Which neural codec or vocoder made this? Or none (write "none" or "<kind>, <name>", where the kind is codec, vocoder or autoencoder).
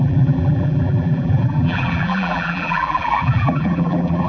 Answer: vocoder, BigVGAN v2